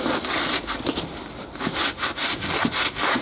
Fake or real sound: real